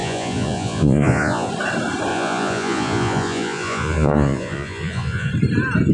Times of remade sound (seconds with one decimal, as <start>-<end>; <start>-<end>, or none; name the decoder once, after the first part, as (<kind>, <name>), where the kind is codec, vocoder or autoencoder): 0.0-1.5 (vocoder, Vocos); 2.1-5.3